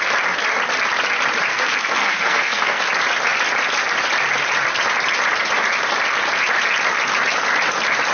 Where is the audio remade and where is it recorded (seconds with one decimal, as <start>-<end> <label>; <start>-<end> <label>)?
0.0-1.5 recorded; 1.5-2.8 remade; 2.8-8.1 recorded